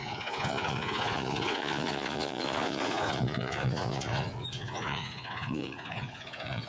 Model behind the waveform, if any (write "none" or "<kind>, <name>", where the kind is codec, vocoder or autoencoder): vocoder, Vocos